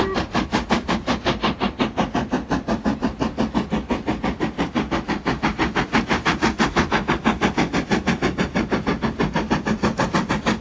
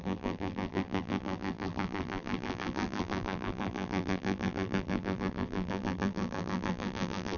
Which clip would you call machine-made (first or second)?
second